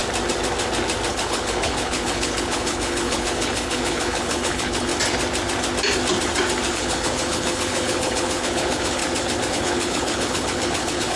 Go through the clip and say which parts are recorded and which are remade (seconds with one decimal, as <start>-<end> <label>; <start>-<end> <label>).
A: 0.0-1.1 recorded; 1.1-4.9 remade; 4.9-6.7 recorded; 6.7-9.0 remade; 9.0-9.5 recorded; 9.5-11.2 remade